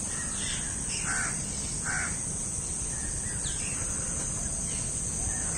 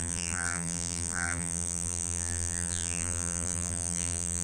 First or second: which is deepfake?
second